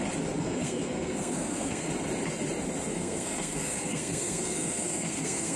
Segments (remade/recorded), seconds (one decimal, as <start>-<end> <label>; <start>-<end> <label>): 0.0-0.4 recorded; 0.4-1.9 remade; 1.9-2.9 recorded; 2.9-5.6 remade